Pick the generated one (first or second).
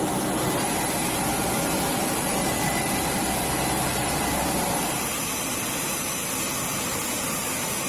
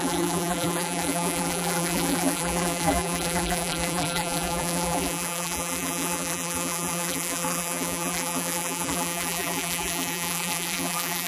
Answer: second